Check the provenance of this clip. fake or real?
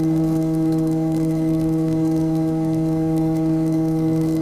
fake